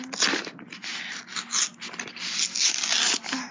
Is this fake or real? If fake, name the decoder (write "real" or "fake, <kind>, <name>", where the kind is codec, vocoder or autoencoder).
real